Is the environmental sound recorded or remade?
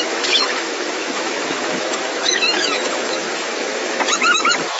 remade